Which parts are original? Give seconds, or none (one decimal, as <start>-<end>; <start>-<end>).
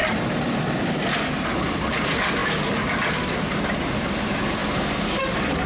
none